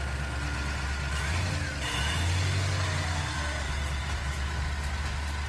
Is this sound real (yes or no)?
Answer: yes